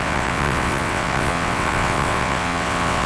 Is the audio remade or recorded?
remade